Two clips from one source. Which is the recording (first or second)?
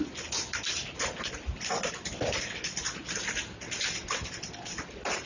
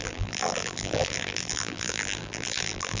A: first